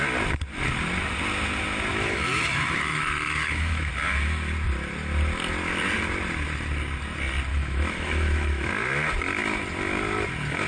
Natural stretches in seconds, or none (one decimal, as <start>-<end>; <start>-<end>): 0.0-1.9; 3.9-7.5; 8.7-10.7